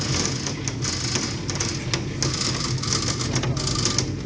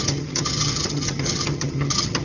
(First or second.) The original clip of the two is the first